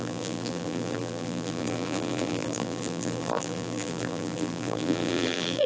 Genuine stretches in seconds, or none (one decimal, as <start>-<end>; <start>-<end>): none